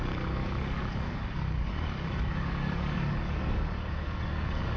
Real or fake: fake